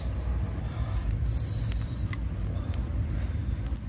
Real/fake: real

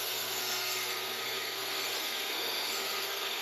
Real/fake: fake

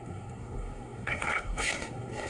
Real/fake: fake